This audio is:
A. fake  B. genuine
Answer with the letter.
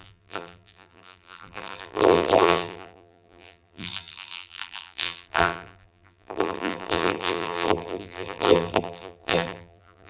A